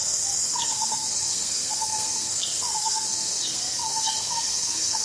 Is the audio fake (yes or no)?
yes